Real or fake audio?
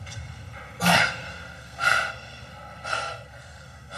fake